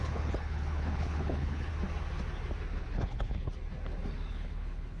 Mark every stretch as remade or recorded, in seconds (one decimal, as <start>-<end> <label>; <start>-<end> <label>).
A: 0.0-1.7 remade; 1.7-2.9 recorded; 2.9-3.5 remade; 3.5-4.3 recorded; 4.3-5.0 remade